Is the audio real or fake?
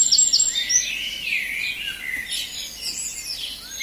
real